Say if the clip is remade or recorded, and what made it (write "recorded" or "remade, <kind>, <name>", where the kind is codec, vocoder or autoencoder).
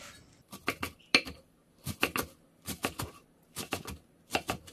recorded